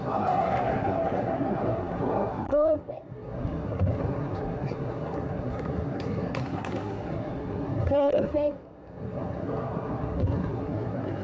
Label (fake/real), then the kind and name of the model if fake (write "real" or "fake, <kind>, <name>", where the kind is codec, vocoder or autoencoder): fake, codec, SNAC